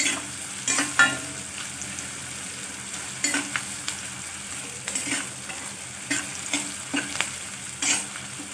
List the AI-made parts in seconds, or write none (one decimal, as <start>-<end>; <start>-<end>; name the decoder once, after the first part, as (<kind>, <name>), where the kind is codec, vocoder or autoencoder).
none